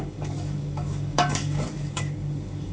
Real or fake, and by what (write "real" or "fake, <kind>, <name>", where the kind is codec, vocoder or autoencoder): fake, codec, DAC